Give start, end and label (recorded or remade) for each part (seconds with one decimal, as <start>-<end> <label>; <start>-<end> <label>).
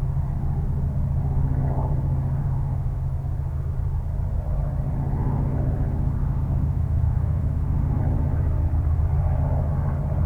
0.0-2.4 recorded; 2.4-3.0 remade; 3.0-6.2 recorded; 6.2-8.0 remade; 8.0-10.3 recorded